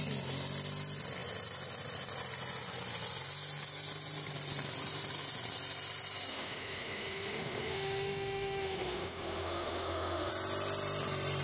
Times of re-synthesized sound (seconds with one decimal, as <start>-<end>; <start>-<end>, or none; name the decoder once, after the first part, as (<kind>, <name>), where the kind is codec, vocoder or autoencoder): 6.3-10.3 (autoencoder, DAC-VAE)